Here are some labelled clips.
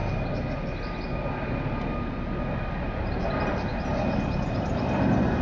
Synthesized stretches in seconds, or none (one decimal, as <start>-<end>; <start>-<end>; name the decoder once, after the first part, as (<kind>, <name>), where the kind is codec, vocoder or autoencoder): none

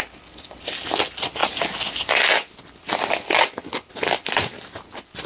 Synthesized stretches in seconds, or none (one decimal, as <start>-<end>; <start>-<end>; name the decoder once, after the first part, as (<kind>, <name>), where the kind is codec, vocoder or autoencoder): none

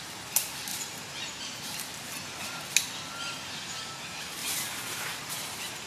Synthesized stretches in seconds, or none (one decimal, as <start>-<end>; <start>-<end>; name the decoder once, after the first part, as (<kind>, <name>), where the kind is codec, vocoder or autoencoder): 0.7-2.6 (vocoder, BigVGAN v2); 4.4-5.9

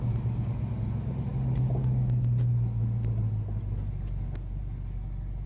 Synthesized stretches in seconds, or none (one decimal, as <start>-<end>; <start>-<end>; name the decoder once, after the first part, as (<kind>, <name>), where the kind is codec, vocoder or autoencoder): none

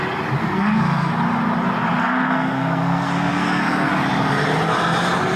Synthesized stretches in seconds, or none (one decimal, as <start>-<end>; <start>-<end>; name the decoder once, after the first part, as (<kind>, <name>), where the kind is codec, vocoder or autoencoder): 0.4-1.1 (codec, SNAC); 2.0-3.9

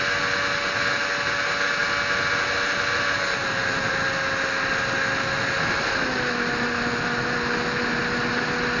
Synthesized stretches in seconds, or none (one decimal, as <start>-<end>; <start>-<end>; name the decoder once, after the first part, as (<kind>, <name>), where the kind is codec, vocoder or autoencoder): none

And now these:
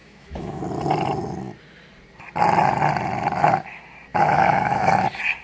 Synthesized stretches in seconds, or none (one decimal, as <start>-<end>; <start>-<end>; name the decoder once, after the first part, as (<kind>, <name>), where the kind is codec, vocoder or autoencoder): 0.0-0.6 (autoencoder, DAC-VAE); 4.1-4.9